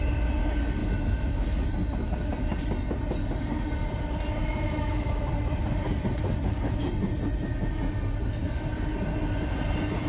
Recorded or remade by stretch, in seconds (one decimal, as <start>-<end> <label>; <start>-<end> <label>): 0.0-0.8 recorded; 0.8-1.3 remade; 1.3-4.4 recorded; 4.4-5.2 remade; 5.2-10.1 recorded